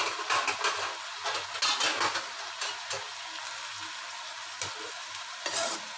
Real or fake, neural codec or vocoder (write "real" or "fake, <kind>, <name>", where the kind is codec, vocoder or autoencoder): real